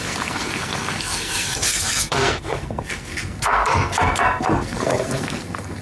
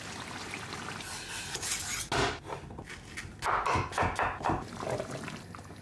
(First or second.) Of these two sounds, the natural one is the second